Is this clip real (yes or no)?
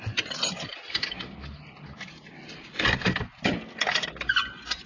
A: yes